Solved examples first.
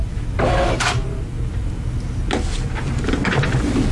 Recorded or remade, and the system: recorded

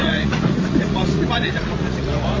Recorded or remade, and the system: remade, vocoder, Vocos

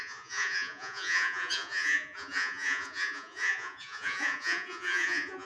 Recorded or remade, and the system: remade, vocoder, Vocos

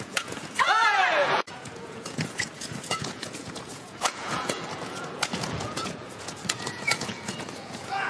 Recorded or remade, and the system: remade, vocoder, Vocos